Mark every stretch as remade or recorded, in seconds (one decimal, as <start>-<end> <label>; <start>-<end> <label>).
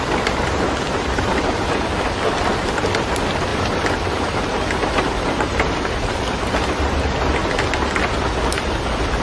0.0-3.5 recorded; 3.5-6.8 remade; 6.8-9.2 recorded